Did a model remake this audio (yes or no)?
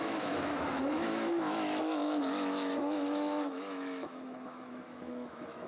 yes